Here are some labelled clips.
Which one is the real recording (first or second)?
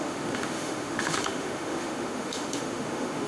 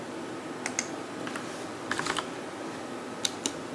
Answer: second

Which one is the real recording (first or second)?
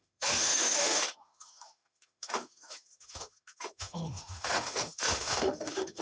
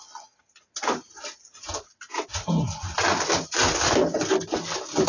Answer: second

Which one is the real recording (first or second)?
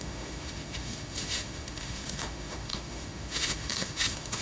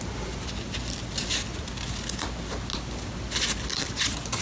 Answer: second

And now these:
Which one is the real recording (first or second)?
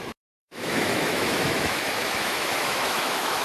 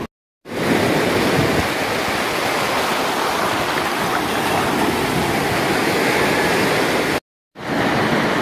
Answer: second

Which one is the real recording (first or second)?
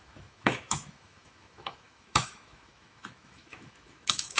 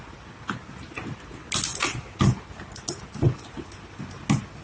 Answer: second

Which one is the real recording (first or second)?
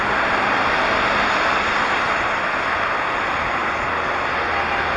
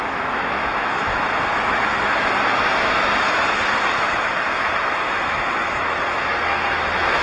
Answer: first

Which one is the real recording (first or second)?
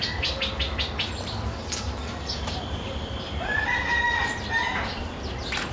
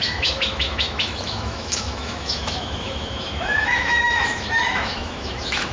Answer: first